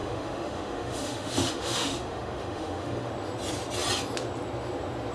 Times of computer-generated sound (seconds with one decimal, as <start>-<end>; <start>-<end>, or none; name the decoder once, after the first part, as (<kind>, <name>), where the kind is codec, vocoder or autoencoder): 0.0-3.1 (autoencoder, DAC-VAE)